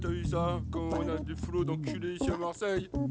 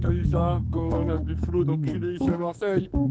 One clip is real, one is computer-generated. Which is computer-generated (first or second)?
second